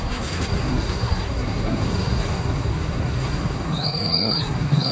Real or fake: fake